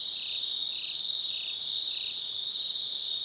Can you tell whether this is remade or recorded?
recorded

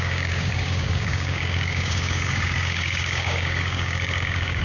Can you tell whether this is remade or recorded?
remade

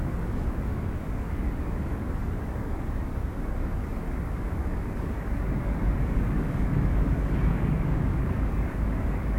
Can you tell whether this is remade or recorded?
remade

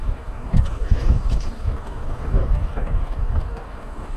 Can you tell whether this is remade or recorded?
remade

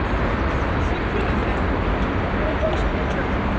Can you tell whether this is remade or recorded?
recorded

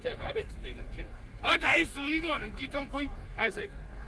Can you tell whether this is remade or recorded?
remade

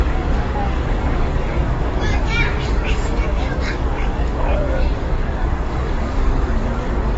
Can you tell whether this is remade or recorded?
remade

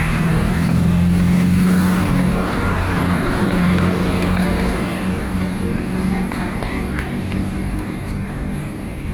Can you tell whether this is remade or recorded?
remade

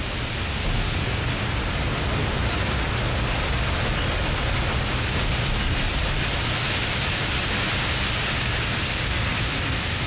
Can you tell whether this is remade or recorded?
recorded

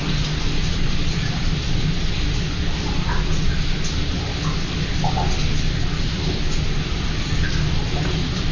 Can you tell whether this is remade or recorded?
recorded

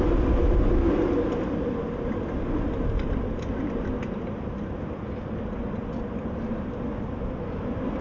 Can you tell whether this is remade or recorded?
recorded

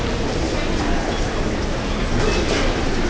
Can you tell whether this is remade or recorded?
recorded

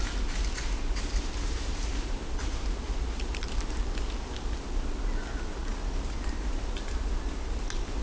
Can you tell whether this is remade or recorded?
recorded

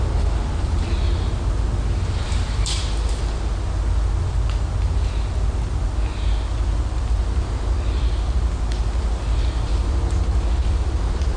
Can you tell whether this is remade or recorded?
recorded